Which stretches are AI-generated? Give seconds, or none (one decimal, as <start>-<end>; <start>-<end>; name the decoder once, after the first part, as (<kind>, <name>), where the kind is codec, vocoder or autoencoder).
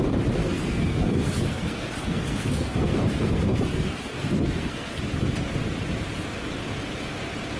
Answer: 0.4-5.0 (codec, SNAC)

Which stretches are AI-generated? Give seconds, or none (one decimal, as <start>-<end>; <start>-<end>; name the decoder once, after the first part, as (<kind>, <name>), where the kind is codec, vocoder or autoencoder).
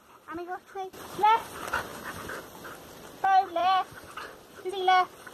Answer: none